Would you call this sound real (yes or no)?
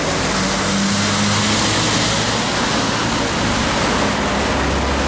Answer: yes